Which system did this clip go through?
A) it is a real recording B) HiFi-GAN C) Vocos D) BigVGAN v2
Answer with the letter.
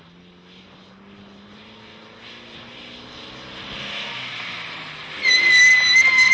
A